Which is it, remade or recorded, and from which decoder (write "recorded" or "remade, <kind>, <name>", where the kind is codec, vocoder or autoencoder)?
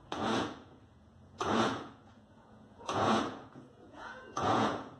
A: remade, vocoder, Vocos